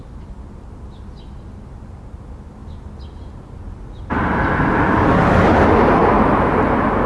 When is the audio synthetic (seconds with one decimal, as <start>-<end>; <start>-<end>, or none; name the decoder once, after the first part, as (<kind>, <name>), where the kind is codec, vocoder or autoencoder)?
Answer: 6.0-7.1 (vocoder, BigVGAN v2)